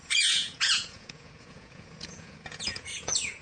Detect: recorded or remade remade